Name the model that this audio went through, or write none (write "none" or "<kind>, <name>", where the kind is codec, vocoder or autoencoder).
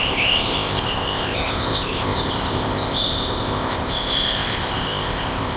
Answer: codec, ZipCodec